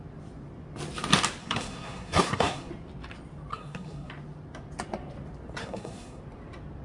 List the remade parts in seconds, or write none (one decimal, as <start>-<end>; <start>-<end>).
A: 1.4-2.7; 3.5-4.1; 5.6-6.2